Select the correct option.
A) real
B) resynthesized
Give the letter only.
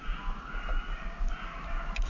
A